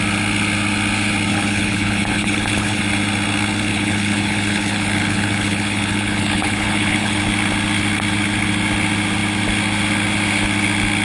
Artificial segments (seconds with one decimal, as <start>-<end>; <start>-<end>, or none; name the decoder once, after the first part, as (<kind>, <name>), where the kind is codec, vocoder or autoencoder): 1.3-2.8 (codec, HILCodec); 3.7-7.2